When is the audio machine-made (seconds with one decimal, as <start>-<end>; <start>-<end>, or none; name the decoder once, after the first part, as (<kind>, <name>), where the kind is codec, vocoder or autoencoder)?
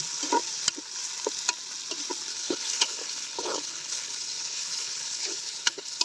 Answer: 2.3-6.0 (codec, HILCodec)